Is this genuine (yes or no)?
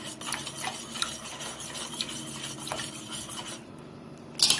yes